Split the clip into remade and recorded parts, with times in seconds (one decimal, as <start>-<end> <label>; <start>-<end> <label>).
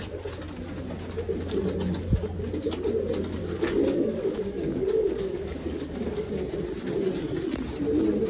0.0-3.4 recorded; 3.4-6.3 remade; 6.3-8.3 recorded